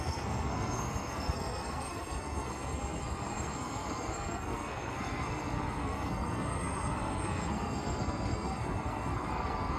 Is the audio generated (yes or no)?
yes